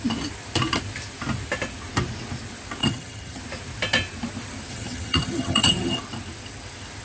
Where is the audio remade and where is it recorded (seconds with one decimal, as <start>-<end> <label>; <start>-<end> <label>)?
0.0-2.8 recorded; 2.8-3.4 remade; 3.4-4.7 recorded; 4.7-6.0 remade; 6.0-7.0 recorded